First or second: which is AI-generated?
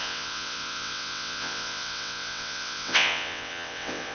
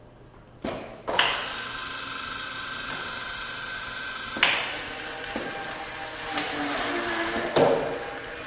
first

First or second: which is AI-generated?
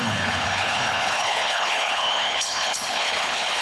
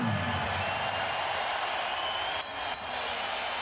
first